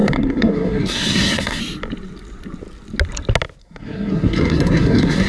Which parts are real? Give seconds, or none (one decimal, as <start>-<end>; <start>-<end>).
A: 1.6-3.6

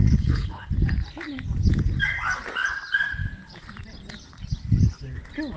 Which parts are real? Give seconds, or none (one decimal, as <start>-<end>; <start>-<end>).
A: 0.7-5.6

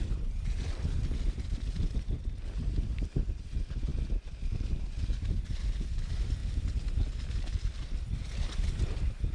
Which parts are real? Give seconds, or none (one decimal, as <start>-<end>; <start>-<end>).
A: 6.4-7.8

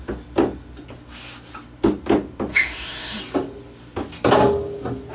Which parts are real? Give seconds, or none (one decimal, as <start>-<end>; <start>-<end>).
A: 0.0-2.5; 3.2-5.1

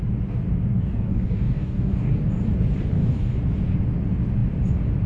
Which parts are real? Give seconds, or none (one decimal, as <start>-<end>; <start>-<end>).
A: 0.0-0.7; 2.1-2.9; 3.4-5.1

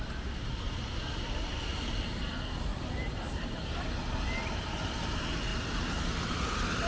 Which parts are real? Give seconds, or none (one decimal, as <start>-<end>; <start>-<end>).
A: 0.0-1.7; 2.3-2.7; 3.7-5.5; 6.0-6.9

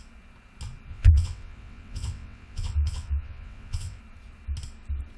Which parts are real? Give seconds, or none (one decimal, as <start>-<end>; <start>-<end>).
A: 0.0-0.9; 4.0-5.2

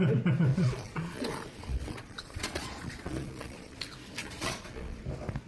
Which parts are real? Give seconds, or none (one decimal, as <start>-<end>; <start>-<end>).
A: 0.0-0.5; 3.8-4.2; 5.0-5.5